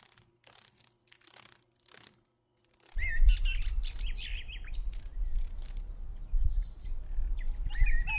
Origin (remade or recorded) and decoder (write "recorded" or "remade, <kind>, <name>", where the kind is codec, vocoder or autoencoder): recorded